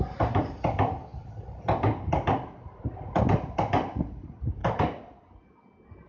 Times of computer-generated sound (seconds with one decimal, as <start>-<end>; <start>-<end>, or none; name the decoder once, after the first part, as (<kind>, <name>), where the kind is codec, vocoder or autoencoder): none